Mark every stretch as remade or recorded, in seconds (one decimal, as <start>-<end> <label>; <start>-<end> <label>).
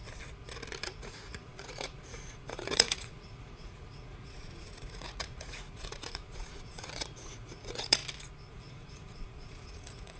0.0-0.8 recorded; 0.8-8.0 remade; 8.0-8.5 recorded; 8.5-10.2 remade